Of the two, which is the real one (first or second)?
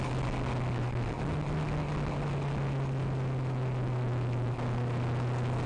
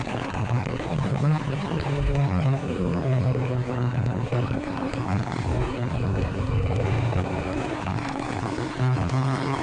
first